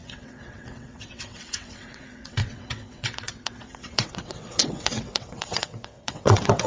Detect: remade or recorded remade